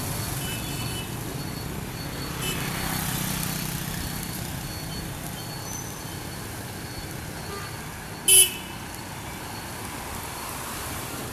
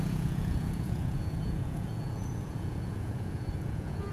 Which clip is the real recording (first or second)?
first